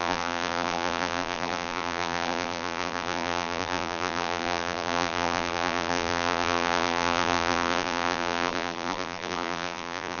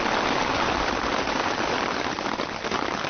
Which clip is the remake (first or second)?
first